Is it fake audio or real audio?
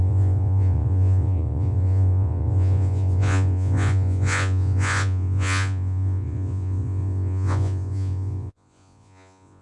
fake